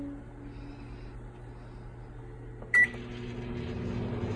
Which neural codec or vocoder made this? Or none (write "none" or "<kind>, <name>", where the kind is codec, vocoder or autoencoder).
none